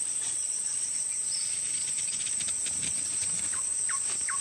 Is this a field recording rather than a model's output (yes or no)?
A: no